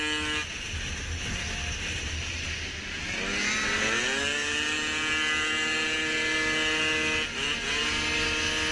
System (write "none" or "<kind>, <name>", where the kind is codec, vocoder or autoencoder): none